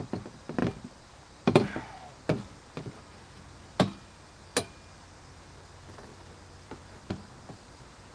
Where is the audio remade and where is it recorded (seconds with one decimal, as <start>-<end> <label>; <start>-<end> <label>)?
0.0-8.1 recorded